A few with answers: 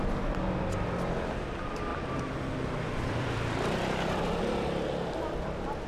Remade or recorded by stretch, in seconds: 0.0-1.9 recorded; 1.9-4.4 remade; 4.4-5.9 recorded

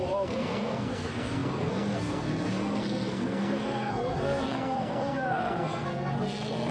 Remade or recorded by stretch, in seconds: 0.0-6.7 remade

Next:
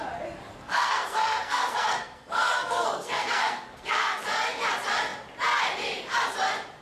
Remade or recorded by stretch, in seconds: 0.0-0.5 recorded; 0.5-4.2 remade; 4.2-6.8 recorded